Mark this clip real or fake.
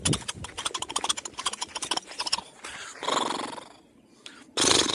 real